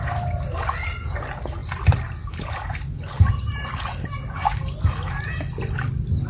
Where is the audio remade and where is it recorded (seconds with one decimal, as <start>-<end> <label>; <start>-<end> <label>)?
0.0-6.3 recorded